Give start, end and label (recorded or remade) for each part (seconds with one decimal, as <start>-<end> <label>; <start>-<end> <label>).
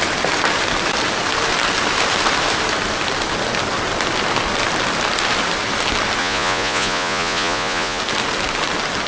0.0-6.2 recorded; 6.2-8.0 remade; 8.0-9.1 recorded